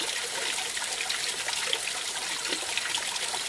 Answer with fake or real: real